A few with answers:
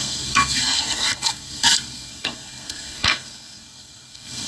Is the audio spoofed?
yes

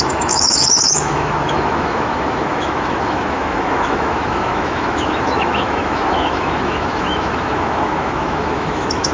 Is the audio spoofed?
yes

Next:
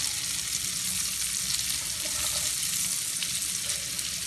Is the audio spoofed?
no